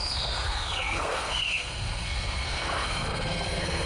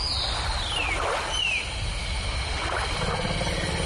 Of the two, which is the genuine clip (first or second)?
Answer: second